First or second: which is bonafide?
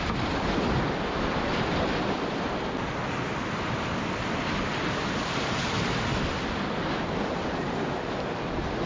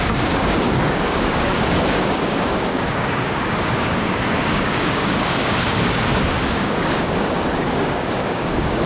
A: first